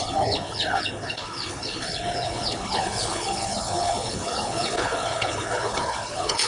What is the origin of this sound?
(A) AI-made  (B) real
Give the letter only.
A